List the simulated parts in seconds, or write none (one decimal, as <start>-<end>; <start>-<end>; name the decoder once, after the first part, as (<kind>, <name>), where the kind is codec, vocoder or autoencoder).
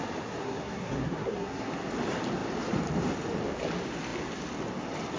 0.4-1.7 (codec, SNAC)